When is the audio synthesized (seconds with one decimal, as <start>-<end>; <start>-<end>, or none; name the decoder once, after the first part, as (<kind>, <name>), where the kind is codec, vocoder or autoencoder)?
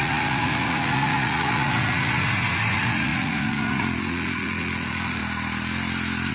0.0-5.2 (vocoder, Vocos)